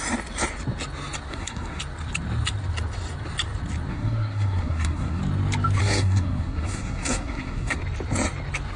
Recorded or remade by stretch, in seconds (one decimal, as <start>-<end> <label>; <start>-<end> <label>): 0.0-1.3 recorded; 1.3-1.8 remade; 1.8-3.9 recorded; 3.9-5.2 remade; 5.2-5.8 recorded; 5.8-7.8 remade; 7.8-8.8 recorded

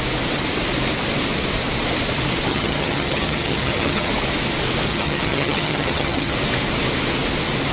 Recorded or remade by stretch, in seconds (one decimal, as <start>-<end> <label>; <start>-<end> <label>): 0.0-2.5 recorded; 2.5-4.1 remade; 4.1-4.9 recorded; 4.9-6.3 remade; 6.3-7.7 recorded

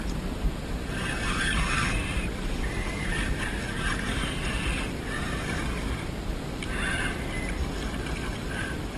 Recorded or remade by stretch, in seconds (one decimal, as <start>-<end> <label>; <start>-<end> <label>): 0.0-3.9 recorded; 3.9-4.4 remade; 4.4-9.0 recorded

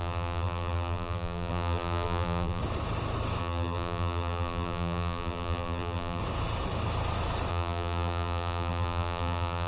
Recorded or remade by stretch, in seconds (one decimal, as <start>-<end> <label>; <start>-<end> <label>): 0.0-2.6 remade; 2.6-3.4 recorded; 3.4-6.2 remade; 6.2-7.5 recorded; 7.5-9.7 remade

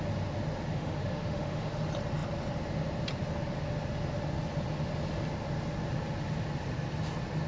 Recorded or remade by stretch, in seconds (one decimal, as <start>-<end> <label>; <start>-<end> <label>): 0.0-0.7 recorded; 0.7-1.8 remade; 1.8-7.5 recorded

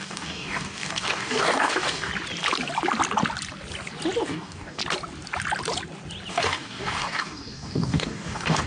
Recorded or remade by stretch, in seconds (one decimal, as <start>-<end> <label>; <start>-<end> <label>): 0.0-2.1 remade; 2.1-4.2 recorded; 4.2-4.8 remade; 4.8-6.3 recorded; 6.3-8.7 remade

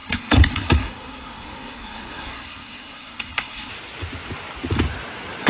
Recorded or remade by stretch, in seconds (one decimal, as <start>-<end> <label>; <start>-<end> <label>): 0.0-3.7 remade; 3.7-5.5 recorded